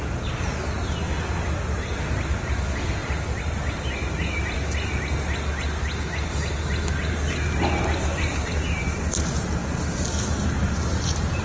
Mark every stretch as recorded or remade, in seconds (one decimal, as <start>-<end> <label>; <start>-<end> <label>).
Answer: 0.0-3.0 recorded; 3.0-3.9 remade; 3.9-11.4 recorded